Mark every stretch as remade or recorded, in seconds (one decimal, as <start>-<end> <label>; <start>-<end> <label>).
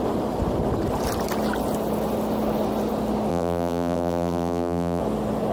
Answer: 0.0-3.3 recorded; 3.3-5.0 remade; 5.0-5.5 recorded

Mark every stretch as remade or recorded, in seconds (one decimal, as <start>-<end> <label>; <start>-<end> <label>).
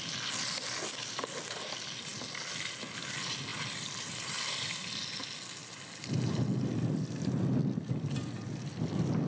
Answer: 0.0-3.5 recorded; 3.5-4.6 remade; 4.6-9.3 recorded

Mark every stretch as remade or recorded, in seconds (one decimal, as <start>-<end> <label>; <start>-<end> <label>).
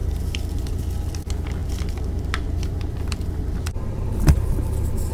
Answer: 0.0-0.8 remade; 0.8-1.6 recorded; 1.6-5.1 remade